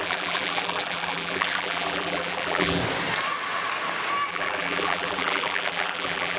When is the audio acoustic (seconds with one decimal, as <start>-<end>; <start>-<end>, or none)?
2.8-4.3